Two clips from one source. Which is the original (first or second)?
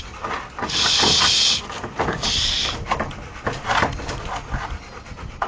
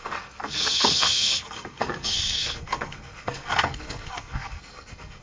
first